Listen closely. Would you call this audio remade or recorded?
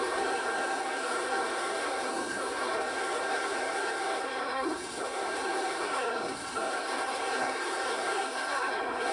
remade